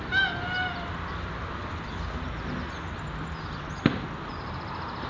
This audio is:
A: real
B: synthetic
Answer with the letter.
A